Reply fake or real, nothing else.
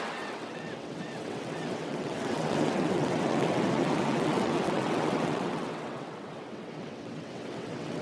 fake